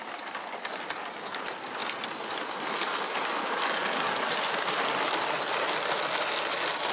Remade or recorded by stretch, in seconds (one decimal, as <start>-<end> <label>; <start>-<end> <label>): 0.0-6.9 recorded